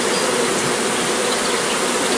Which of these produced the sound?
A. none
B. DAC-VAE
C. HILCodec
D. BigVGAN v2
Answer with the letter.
A